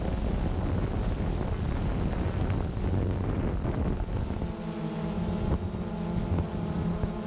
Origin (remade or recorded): recorded